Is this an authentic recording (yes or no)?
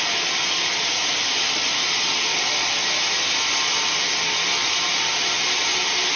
yes